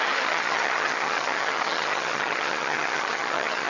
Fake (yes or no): yes